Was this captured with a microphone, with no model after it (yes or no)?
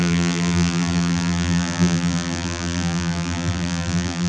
no